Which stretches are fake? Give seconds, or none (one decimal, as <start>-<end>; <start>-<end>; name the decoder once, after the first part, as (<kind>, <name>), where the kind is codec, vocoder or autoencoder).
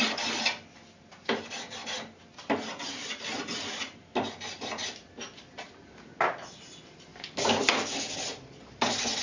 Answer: 7.1-7.6 (codec, DAC)